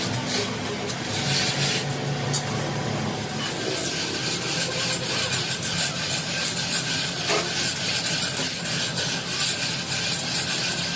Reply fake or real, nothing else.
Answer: real